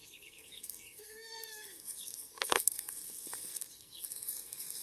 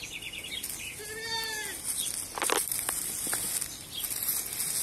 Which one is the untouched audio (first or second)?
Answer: second